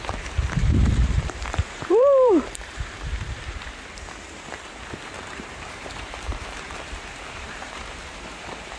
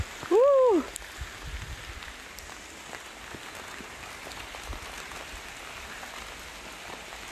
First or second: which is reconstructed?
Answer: first